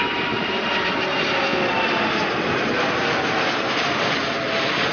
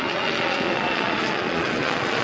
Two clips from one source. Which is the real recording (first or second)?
first